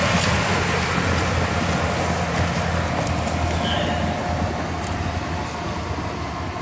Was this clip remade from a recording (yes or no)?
no